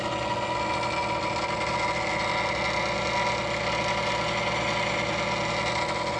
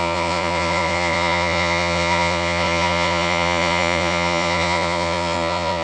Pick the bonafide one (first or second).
first